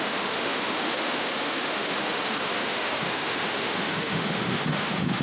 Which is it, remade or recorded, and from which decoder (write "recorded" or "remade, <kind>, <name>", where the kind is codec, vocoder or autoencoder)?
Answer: remade, autoencoder, DAC-VAE